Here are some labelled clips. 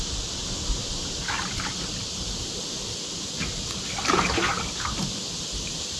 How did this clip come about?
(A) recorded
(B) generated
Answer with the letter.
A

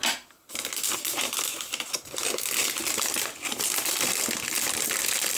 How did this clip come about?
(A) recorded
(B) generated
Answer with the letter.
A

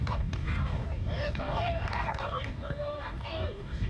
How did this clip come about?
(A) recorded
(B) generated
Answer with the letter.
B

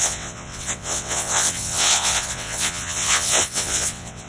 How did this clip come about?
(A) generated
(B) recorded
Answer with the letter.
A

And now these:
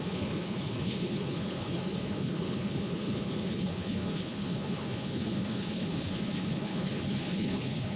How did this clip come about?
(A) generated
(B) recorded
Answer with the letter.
A